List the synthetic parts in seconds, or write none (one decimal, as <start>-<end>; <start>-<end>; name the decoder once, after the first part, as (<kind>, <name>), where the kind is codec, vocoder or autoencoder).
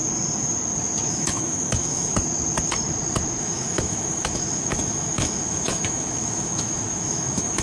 1.1-2.1 (autoencoder, DAC-VAE); 3.4-7.6